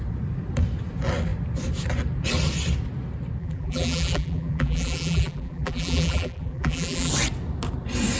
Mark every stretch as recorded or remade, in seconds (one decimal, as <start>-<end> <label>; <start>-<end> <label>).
0.0-3.4 recorded; 3.4-7.1 remade; 7.1-8.2 recorded

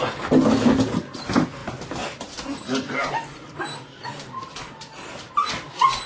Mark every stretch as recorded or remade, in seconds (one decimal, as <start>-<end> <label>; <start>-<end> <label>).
0.0-6.1 recorded